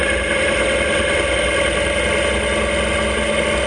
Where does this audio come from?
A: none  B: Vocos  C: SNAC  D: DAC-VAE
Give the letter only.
A